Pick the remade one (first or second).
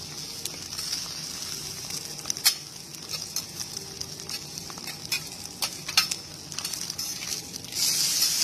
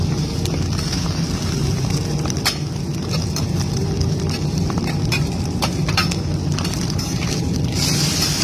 second